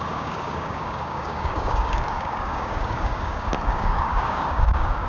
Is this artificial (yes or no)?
yes